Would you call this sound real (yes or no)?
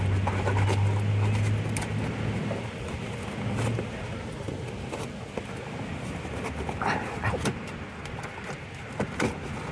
yes